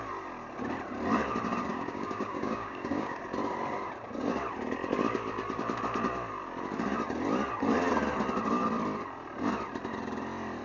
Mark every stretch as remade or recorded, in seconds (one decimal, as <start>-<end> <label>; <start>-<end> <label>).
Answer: 0.0-1.7 recorded; 1.7-3.2 remade; 3.2-10.6 recorded